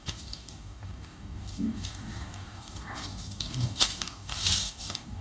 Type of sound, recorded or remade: remade